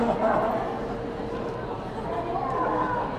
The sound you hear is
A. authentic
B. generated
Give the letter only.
A